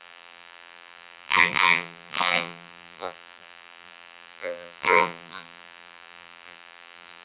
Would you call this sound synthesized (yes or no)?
yes